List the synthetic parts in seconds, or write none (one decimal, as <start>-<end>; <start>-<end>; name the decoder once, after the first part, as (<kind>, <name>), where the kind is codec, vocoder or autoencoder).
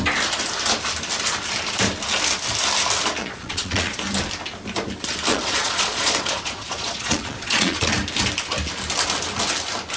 3.2-4.0 (vocoder, Vocos); 5.3-7.9